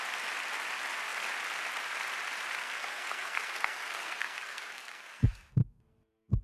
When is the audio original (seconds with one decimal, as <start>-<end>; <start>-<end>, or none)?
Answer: 0.0-2.6